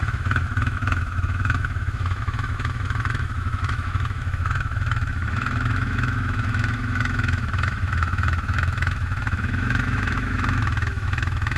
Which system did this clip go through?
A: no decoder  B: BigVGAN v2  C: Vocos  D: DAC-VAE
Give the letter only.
D